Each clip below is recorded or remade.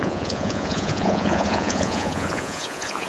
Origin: remade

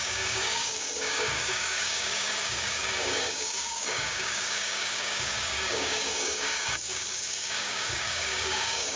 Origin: remade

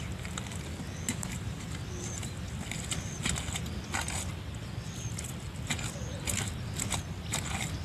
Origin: recorded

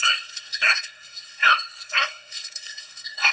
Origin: remade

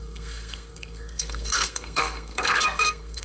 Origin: remade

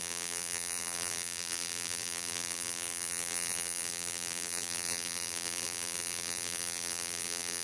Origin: remade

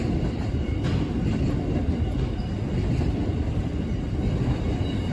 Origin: recorded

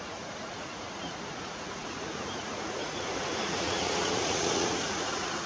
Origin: remade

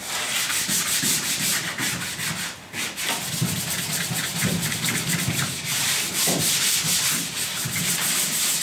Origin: remade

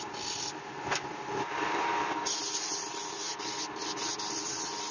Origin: recorded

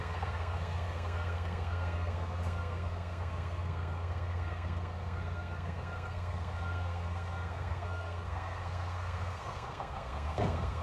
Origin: remade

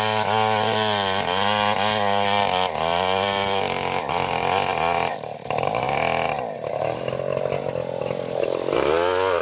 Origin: recorded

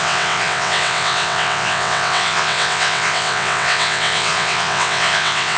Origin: remade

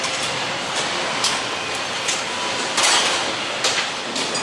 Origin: recorded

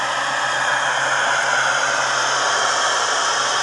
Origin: recorded